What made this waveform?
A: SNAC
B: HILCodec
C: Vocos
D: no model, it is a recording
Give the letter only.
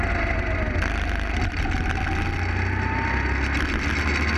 D